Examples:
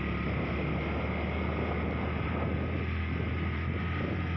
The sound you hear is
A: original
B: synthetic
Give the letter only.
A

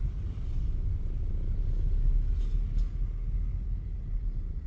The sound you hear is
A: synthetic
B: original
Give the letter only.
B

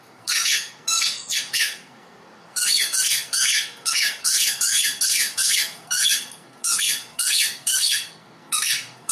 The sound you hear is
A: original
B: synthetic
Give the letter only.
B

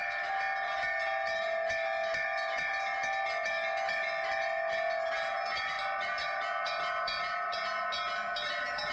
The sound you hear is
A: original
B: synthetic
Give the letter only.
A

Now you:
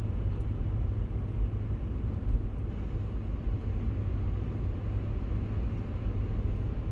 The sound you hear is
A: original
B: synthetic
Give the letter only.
A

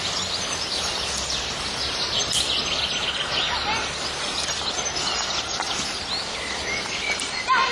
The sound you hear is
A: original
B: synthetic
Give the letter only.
A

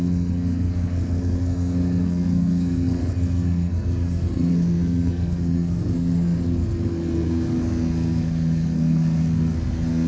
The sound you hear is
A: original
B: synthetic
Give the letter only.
B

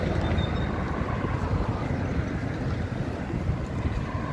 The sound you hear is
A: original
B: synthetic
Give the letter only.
A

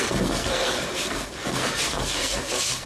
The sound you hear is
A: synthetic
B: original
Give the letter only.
A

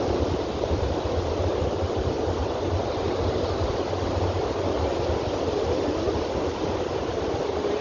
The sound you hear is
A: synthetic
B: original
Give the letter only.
B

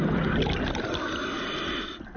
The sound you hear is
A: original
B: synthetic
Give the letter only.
A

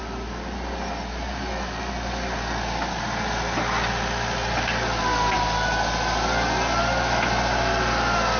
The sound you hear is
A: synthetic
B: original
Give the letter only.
B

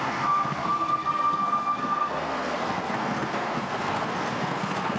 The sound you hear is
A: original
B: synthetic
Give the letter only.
B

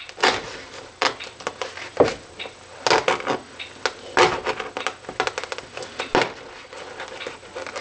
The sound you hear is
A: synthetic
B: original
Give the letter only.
B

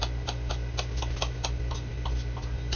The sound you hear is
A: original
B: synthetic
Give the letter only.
A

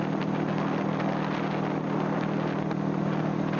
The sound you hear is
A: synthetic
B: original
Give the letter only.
B